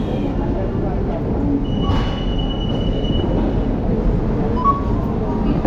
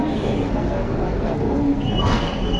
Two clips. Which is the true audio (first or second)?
first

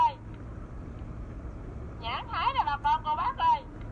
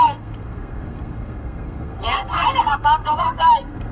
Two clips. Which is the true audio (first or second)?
first